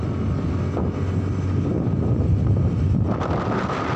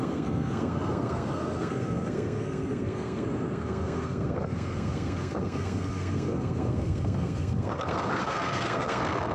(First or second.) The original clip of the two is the first